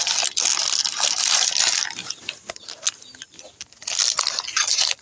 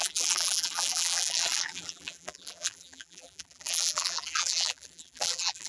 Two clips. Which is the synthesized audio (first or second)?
second